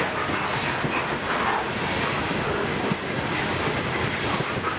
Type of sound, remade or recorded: recorded